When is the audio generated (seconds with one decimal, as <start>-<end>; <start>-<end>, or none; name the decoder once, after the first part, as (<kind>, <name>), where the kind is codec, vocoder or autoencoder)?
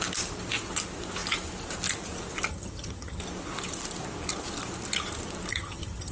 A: 2.5-3.2 (vocoder, HiFi-GAN); 5.5-6.1